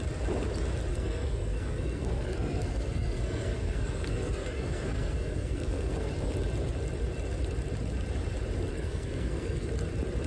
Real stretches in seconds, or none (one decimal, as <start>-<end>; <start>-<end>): 0.0-0.9; 6.1-8.7; 9.7-10.3